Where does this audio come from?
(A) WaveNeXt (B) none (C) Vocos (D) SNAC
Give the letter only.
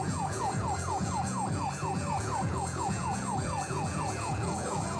C